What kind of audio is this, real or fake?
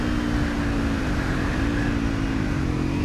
real